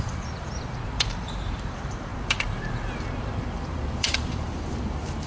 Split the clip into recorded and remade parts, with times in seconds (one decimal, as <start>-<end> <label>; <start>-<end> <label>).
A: 0.0-5.3 remade